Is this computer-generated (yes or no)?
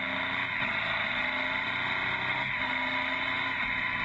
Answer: no